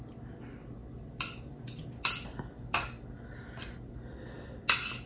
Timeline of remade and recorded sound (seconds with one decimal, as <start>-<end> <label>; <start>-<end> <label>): 0.0-5.1 recorded

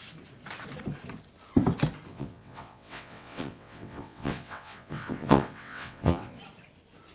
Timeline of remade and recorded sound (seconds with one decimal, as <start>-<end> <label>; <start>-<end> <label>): 0.0-2.1 recorded; 2.1-6.4 remade; 6.4-7.1 recorded

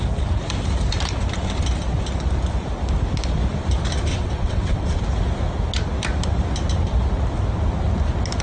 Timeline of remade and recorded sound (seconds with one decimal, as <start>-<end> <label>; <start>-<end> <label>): 0.0-4.1 recorded; 4.1-5.0 remade; 5.0-8.4 recorded